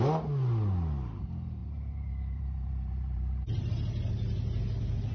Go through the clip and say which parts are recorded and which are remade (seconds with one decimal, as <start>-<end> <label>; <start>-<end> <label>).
0.0-1.6 recorded; 1.6-3.7 remade; 3.7-5.1 recorded